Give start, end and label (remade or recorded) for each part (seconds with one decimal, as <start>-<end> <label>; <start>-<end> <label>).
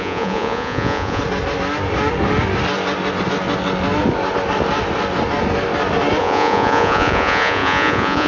0.0-1.2 remade; 1.2-6.2 recorded; 6.2-8.3 remade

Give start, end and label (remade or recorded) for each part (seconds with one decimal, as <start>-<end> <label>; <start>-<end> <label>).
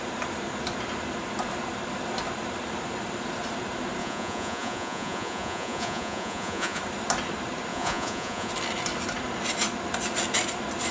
0.0-4.0 recorded; 4.0-6.8 remade; 6.8-7.7 recorded; 7.7-8.5 remade; 8.5-10.9 recorded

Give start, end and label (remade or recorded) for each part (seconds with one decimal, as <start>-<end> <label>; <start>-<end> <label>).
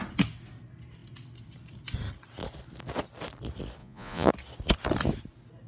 0.0-3.8 recorded; 3.8-4.3 remade; 4.3-5.7 recorded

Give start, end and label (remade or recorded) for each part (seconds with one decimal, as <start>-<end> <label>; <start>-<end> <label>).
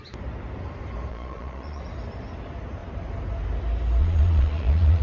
0.0-1.1 recorded; 1.1-1.8 remade; 1.8-4.0 recorded; 4.0-5.0 remade